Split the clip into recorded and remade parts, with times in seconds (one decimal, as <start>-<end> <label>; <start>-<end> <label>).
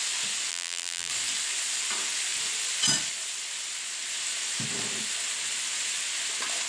0.0-0.5 recorded; 0.5-1.1 remade; 1.1-6.7 recorded